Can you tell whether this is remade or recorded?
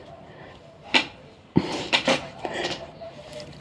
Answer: remade